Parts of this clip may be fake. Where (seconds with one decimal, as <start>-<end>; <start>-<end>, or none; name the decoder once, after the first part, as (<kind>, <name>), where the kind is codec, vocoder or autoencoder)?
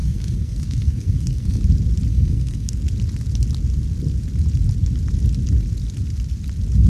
0.0-1.6 (codec, SNAC); 2.1-2.7